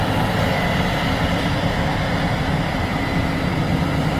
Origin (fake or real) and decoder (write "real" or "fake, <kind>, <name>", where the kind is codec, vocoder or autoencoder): fake, vocoder, BigVGAN v2